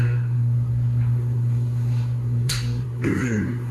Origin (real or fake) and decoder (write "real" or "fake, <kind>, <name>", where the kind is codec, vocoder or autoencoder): fake, codec, SNAC